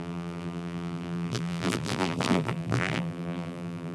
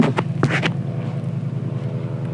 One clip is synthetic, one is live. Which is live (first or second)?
second